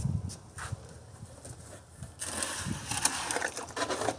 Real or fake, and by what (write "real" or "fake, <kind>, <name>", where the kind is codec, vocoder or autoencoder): real